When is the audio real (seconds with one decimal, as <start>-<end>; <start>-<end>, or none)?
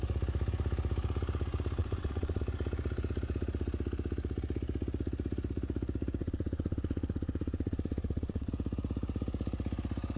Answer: 0.0-1.8; 2.4-6.2; 8.5-10.2